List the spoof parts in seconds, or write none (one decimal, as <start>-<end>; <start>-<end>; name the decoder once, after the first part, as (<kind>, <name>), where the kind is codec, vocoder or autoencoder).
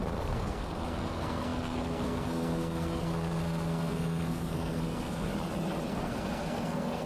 0.0-5.3 (codec, SNAC); 5.9-7.1